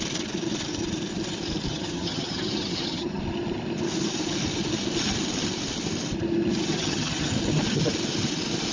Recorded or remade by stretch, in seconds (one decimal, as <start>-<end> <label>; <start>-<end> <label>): 0.0-1.7 recorded; 1.7-3.2 remade; 3.2-6.7 recorded; 6.7-7.3 remade; 7.3-8.7 recorded